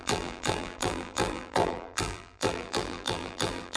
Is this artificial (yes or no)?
yes